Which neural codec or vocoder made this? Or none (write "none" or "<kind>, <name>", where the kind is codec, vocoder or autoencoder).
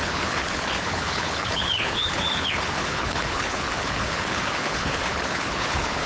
codec, HILCodec